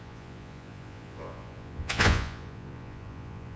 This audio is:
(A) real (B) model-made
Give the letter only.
B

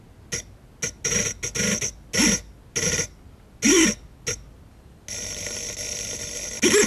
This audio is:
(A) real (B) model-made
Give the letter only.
A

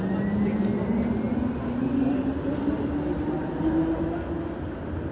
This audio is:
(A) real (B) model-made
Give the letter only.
A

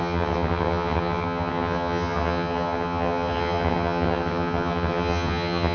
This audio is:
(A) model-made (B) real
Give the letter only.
A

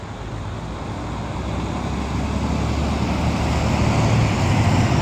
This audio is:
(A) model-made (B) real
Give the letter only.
B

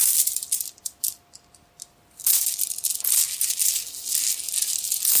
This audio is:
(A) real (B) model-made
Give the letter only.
A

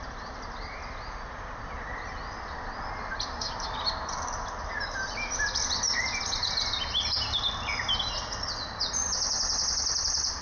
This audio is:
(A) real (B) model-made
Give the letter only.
A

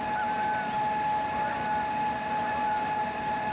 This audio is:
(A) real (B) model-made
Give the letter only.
A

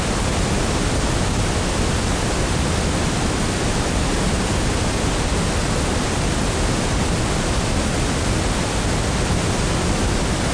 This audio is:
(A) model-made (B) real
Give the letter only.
B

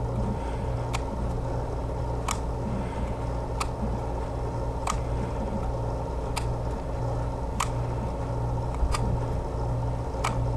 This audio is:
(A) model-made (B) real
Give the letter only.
B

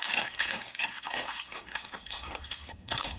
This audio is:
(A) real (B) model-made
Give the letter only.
B